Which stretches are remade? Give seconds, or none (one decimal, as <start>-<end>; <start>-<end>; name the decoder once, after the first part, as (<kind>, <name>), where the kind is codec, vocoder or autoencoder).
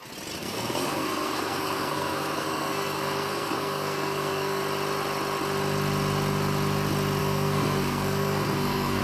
0.4-4.6 (codec, SNAC); 7.2-9.0